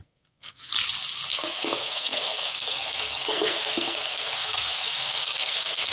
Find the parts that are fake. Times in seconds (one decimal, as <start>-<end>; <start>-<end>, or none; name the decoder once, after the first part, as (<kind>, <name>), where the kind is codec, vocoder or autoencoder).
0.0-0.7 (codec, SNAC); 1.3-5.9